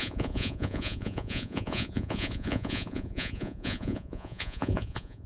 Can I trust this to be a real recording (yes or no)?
no